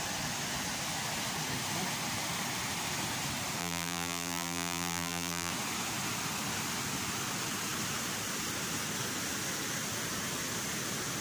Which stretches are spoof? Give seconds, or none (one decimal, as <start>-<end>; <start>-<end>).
3.6-5.5